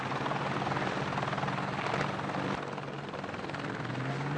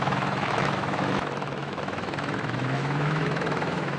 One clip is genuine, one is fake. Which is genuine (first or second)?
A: first